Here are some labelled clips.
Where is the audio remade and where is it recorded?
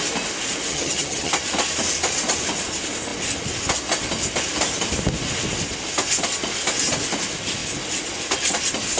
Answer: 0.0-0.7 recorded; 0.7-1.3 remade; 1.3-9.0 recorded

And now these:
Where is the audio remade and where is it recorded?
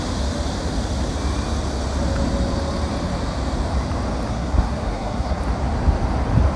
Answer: 0.0-4.3 recorded; 4.3-5.4 remade; 5.4-6.6 recorded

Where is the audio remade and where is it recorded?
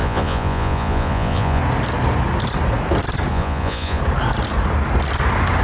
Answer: 0.0-1.6 remade; 1.6-3.3 recorded; 3.3-4.0 remade; 4.0-5.6 recorded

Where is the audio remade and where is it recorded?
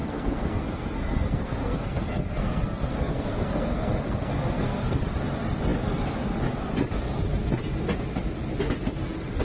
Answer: 0.0-5.0 remade; 5.0-9.4 recorded